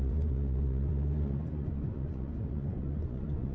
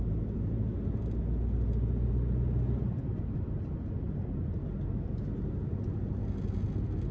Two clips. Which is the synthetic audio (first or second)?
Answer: first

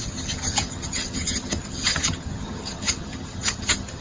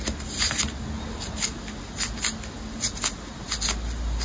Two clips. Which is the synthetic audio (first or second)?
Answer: first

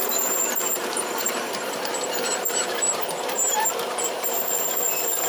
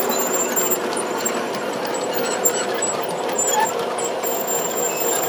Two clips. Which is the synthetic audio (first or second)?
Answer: first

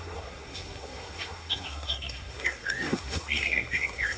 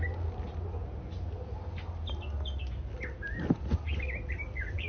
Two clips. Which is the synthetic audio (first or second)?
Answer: first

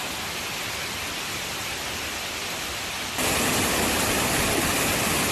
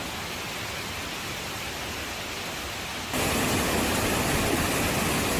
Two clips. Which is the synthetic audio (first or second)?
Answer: first